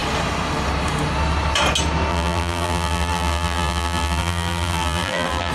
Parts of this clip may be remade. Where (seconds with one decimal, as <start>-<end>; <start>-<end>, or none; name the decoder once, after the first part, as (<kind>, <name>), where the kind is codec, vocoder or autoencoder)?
2.1-5.5 (vocoder, BigVGAN v2)